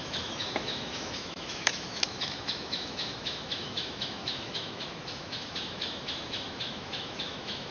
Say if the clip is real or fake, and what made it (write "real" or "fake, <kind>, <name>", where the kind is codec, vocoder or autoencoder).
fake, autoencoder, DAC-VAE